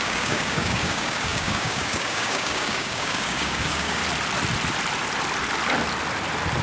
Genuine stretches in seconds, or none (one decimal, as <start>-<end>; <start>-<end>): 4.0-6.6